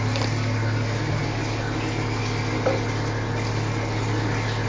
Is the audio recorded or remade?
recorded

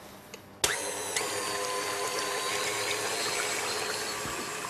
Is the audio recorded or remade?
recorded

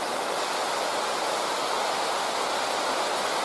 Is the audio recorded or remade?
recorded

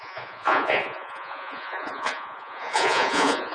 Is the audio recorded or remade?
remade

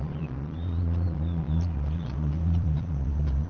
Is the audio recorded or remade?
remade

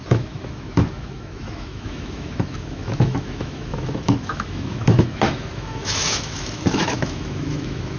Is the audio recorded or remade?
remade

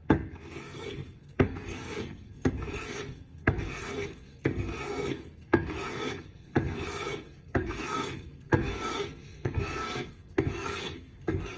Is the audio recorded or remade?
remade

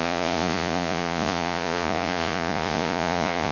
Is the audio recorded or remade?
remade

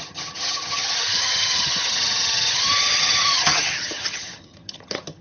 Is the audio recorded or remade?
remade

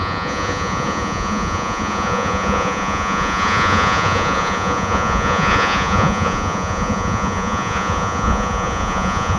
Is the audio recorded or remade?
remade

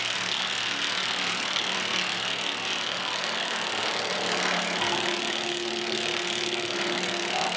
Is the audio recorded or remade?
remade